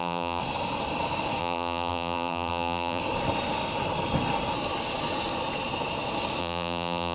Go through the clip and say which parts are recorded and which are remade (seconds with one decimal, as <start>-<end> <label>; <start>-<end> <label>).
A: 0.0-0.4 remade; 0.4-1.4 recorded; 1.4-3.0 remade; 3.0-6.4 recorded; 6.4-7.1 remade

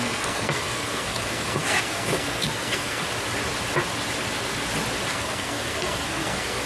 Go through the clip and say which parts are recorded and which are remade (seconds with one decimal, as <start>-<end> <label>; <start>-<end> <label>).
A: 0.0-3.0 remade; 3.0-5.1 recorded; 5.1-6.7 remade

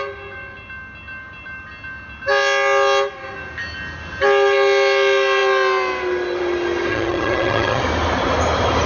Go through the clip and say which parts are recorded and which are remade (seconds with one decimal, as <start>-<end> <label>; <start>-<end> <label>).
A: 0.0-6.9 recorded; 6.9-7.8 remade; 7.8-8.9 recorded

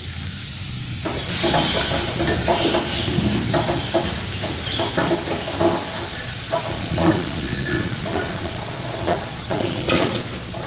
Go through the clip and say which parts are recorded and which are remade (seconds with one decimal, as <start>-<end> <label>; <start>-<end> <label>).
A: 0.0-6.1 recorded; 6.1-10.7 remade

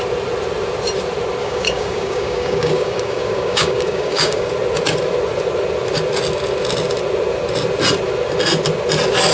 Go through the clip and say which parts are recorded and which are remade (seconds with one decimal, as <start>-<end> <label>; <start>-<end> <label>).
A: 0.0-1.4 recorded; 1.4-4.5 remade; 4.5-9.3 recorded

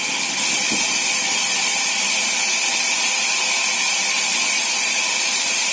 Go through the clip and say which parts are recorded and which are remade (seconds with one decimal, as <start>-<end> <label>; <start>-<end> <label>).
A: 0.0-5.7 remade